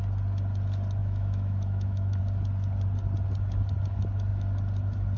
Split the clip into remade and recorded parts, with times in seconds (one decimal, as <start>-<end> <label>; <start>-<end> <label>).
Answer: 0.0-1.0 recorded; 1.0-2.2 remade; 2.2-5.2 recorded